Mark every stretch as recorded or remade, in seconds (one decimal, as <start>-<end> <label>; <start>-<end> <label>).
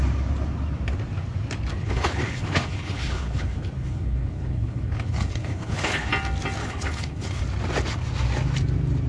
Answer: 0.0-1.7 recorded; 1.7-6.1 remade; 6.1-6.6 recorded; 6.6-7.4 remade; 7.4-9.1 recorded